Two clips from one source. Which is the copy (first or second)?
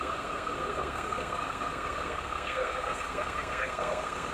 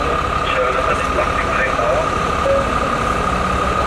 first